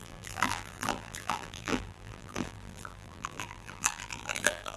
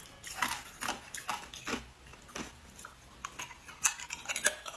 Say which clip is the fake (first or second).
first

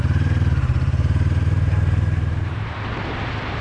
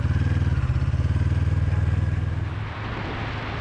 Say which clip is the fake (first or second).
first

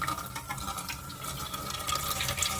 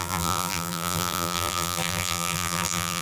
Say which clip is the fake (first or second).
second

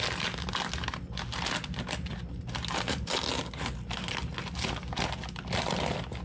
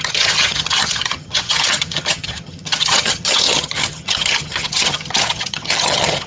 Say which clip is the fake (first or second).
second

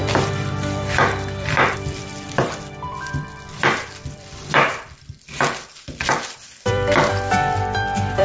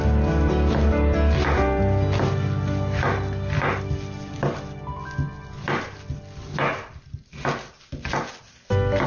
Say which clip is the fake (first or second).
first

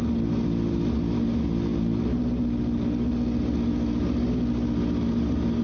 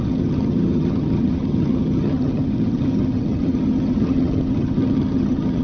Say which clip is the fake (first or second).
second